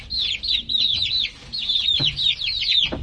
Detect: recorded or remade recorded